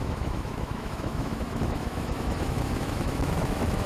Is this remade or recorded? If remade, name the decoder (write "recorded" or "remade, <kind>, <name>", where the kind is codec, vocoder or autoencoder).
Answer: remade, autoencoder, DAC-VAE